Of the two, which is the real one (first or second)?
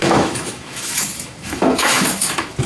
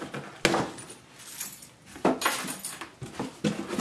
second